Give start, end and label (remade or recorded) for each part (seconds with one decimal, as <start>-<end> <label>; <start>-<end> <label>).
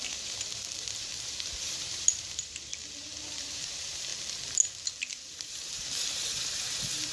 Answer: 0.0-2.7 remade; 2.7-3.3 recorded; 3.3-4.1 remade; 4.1-4.9 recorded; 4.9-7.1 remade